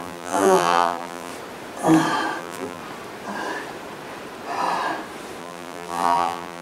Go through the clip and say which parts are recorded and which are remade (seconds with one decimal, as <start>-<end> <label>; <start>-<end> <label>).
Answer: 0.0-1.3 remade; 1.3-2.4 recorded; 2.4-2.8 remade; 2.8-5.4 recorded; 5.4-6.6 remade